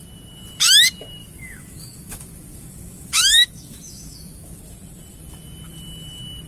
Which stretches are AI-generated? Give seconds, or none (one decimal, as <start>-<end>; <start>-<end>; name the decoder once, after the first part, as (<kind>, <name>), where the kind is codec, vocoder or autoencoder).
1.2-4.6 (autoencoder, DAC-VAE)